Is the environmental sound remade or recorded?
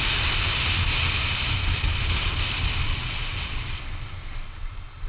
recorded